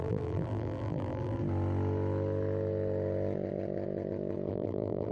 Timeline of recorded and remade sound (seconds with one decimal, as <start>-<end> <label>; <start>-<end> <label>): 0.0-1.4 remade; 1.4-4.5 recorded; 4.5-5.1 remade

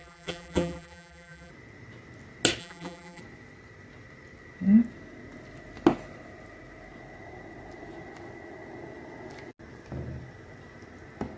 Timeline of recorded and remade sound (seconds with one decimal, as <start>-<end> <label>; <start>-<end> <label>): 0.0-1.5 remade; 1.5-2.6 recorded; 2.6-3.2 remade; 3.2-11.4 recorded

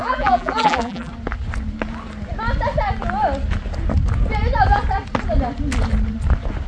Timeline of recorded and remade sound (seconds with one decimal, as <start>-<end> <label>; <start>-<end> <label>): 0.0-1.1 remade; 1.1-6.7 recorded

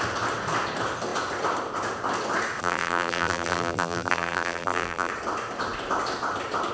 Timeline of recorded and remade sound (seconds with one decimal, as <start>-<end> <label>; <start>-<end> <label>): 0.0-2.6 recorded; 2.6-5.1 remade; 5.1-6.7 recorded

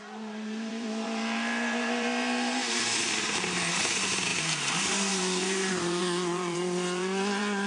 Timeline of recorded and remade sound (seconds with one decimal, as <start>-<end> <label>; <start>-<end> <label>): 0.0-7.7 remade

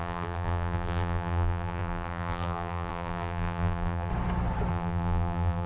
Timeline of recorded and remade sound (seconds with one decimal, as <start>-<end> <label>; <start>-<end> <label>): 0.0-4.1 remade; 4.1-4.7 recorded; 4.7-5.7 remade